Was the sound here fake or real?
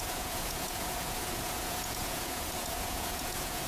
fake